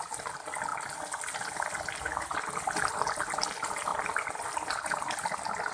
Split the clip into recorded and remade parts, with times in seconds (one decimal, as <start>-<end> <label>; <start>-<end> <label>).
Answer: 0.0-5.7 recorded